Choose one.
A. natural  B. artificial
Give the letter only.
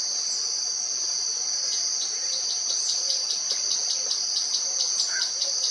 A